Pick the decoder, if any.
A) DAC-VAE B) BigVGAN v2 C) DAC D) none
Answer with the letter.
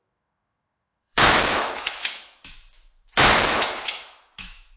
A